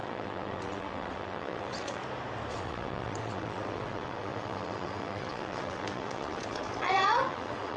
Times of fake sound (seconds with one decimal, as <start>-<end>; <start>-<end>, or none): 0.0-2.0; 2.5-7.8